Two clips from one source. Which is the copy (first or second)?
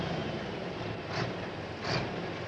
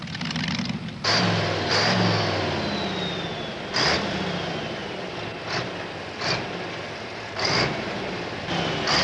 first